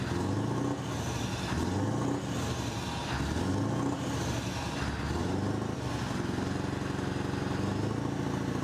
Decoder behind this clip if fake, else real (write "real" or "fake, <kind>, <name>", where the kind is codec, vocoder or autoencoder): real